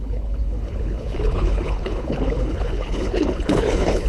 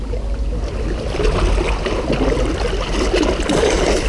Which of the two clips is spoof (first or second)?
first